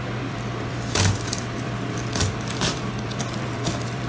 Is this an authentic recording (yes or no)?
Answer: no